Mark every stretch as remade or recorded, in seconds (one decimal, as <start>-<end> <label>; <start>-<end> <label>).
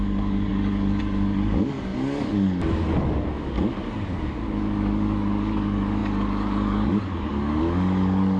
0.0-8.4 remade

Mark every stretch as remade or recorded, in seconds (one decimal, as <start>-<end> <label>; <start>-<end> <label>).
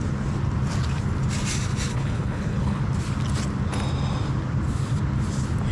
0.0-1.9 recorded; 1.9-2.8 remade; 2.8-5.7 recorded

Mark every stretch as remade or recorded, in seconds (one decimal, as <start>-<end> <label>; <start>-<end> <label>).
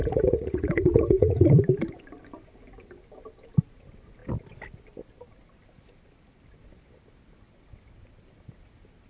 0.0-1.6 remade; 1.6-9.1 recorded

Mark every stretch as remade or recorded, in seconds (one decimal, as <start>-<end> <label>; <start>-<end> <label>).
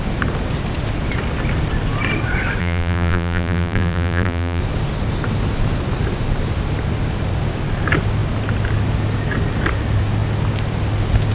0.0-2.6 recorded; 2.6-4.6 remade; 4.6-11.3 recorded